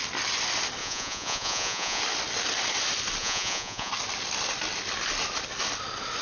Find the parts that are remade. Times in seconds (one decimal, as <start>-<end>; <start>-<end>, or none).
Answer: 0.8-2.0; 3.2-3.9